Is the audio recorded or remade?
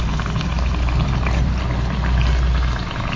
recorded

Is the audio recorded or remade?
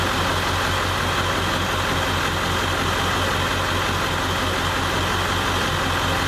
recorded